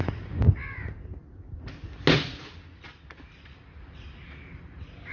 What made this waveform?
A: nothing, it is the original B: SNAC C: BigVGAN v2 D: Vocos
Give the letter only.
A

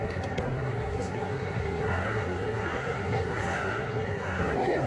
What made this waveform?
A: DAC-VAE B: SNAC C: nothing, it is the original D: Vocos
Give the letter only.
B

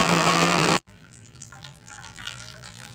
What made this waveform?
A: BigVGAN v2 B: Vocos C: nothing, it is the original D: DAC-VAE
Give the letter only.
A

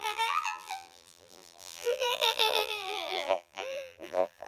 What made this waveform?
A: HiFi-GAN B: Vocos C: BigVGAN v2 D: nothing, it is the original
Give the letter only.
C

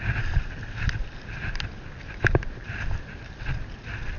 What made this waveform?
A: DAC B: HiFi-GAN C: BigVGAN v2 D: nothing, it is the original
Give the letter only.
D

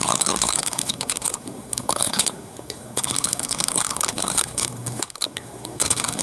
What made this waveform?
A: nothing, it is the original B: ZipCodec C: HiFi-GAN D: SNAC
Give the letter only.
D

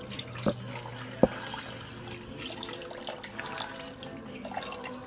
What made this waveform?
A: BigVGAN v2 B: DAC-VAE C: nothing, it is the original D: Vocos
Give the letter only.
C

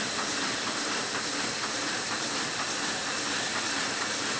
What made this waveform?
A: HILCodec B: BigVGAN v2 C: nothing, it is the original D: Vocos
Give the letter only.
B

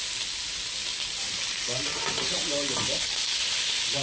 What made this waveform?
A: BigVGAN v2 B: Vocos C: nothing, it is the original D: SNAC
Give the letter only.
C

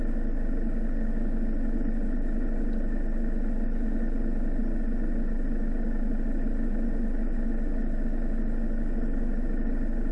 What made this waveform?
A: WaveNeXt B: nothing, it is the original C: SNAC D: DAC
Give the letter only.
B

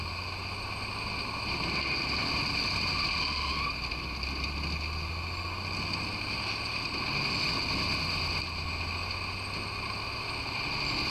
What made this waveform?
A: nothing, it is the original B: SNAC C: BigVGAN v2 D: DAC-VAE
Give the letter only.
A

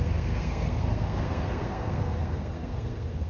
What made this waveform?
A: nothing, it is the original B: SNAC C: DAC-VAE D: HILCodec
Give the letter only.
B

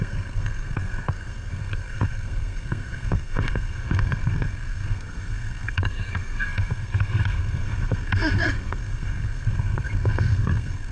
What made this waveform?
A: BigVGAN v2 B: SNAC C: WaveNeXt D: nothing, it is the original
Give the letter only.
B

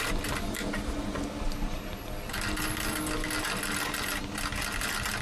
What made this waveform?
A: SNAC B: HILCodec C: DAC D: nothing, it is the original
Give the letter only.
D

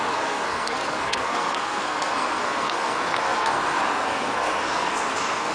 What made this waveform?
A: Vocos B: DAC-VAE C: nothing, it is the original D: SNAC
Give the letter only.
D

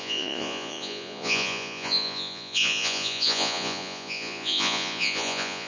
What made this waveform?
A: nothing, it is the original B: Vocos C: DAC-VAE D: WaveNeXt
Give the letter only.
B